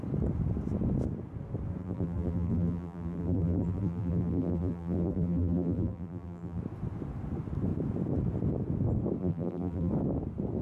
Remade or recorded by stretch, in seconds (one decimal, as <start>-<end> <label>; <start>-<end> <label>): 0.0-1.8 recorded; 1.8-6.6 remade; 6.6-9.2 recorded; 9.2-9.9 remade; 9.9-10.6 recorded